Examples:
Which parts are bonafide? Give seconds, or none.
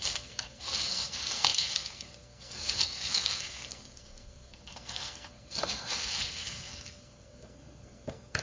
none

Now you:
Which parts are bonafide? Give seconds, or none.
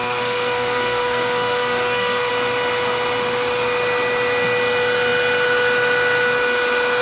2.3-7.0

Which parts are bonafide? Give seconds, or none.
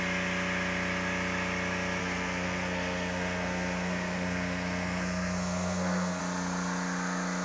0.0-2.0; 6.2-7.4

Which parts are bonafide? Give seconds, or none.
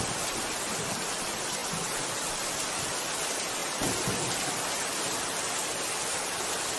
0.0-6.8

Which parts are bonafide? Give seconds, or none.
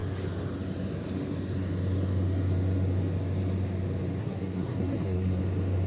0.0-4.2; 5.4-5.9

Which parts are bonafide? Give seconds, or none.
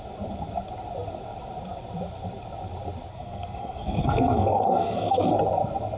0.0-3.1; 5.3-6.0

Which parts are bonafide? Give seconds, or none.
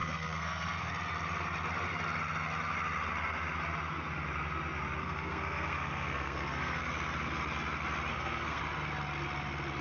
0.9-5.0; 6.8-8.1; 8.6-9.8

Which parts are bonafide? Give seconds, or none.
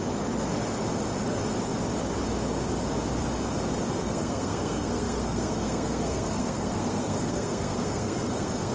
0.0-4.0